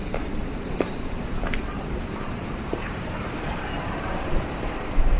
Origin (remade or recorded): remade